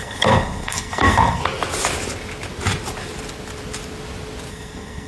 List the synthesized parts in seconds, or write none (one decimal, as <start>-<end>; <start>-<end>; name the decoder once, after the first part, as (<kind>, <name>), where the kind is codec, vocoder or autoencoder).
0.0-1.4 (codec, SNAC); 4.5-5.1